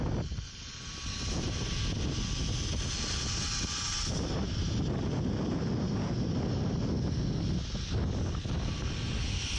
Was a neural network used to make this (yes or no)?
no